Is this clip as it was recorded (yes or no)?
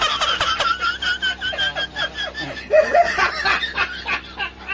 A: yes